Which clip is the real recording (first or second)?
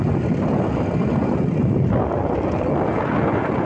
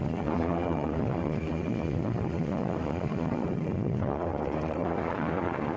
first